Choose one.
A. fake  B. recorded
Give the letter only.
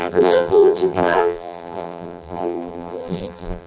A